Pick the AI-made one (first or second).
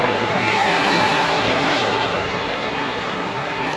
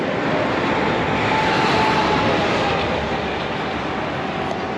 first